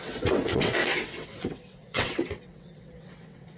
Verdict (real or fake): fake